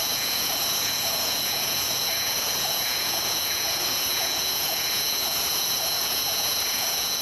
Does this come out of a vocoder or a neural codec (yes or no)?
yes